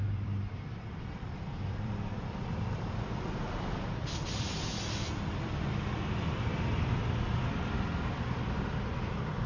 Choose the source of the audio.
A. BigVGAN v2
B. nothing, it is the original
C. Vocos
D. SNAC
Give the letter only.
A